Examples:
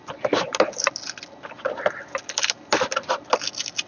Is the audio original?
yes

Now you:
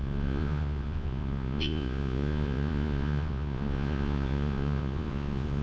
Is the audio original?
no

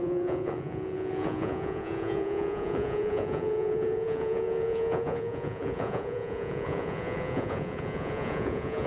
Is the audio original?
no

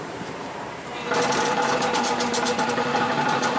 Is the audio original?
no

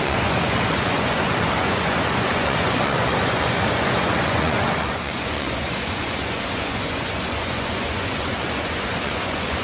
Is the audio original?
no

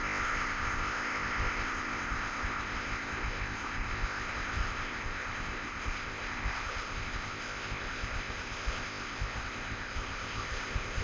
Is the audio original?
no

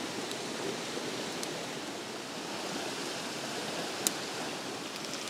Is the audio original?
yes